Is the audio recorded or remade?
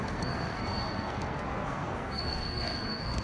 remade